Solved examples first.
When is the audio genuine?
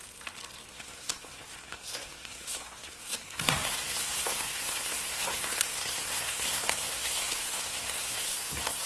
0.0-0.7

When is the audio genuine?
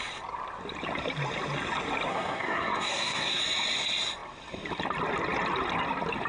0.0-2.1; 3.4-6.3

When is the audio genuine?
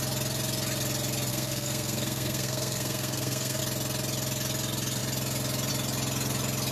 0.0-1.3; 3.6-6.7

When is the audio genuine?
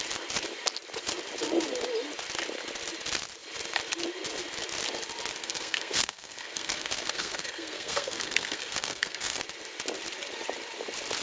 0.0-5.4; 9.4-11.2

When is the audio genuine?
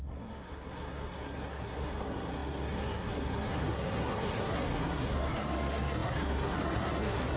none